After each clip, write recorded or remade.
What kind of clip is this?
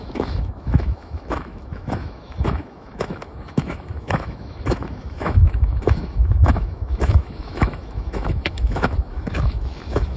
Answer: remade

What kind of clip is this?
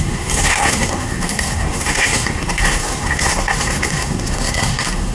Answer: remade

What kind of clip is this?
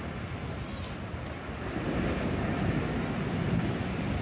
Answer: recorded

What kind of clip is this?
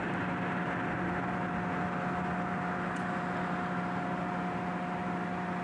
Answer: recorded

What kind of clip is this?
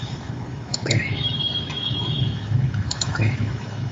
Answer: remade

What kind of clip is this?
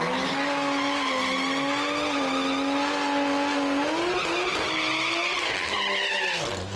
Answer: recorded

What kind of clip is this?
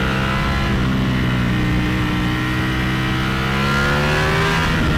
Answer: recorded